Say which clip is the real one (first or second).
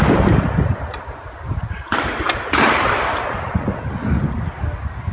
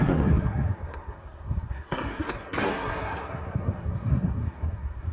first